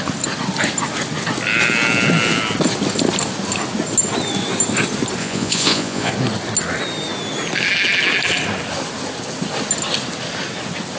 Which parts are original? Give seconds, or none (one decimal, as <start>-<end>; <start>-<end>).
0.0-5.2; 6.1-11.0